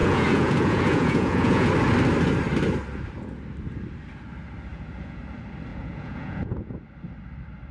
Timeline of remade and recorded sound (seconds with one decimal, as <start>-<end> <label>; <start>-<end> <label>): 0.0-1.7 remade; 1.7-4.7 recorded; 4.7-5.2 remade; 5.2-5.7 recorded; 5.7-6.7 remade; 6.7-7.7 recorded